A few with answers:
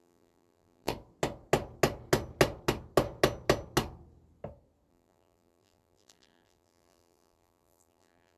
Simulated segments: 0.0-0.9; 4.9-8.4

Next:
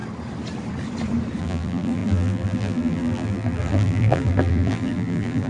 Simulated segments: 1.4-5.5